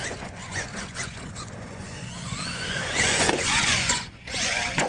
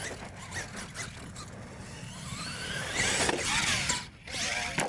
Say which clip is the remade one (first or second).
first